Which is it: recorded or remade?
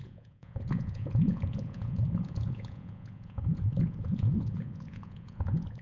remade